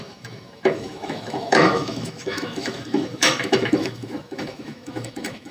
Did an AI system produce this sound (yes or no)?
yes